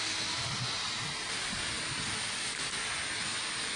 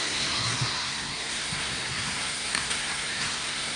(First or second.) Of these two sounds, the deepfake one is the second